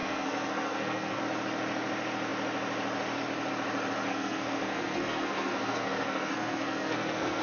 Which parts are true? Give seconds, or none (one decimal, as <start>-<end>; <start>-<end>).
1.2-4.1